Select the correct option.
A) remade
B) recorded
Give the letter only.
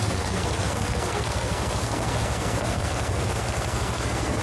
A